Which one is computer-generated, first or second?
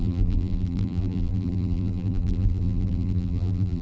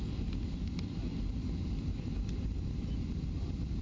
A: first